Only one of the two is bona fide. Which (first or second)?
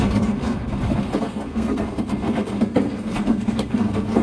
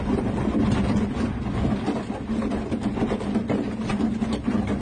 second